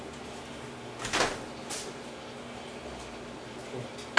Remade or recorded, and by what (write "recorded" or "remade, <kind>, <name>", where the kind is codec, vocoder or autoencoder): recorded